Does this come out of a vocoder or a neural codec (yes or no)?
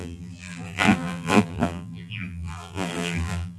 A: yes